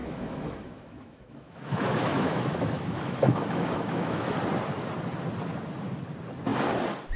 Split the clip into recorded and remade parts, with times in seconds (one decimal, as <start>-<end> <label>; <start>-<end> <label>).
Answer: 0.0-4.3 remade; 4.3-7.2 recorded